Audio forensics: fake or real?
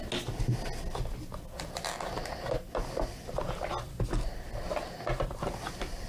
real